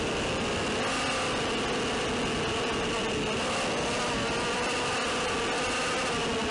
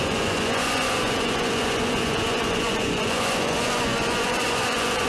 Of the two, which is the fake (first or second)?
second